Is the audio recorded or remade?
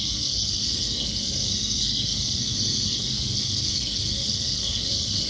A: remade